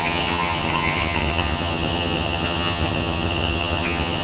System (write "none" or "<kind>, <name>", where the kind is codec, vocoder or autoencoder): vocoder, HiFi-GAN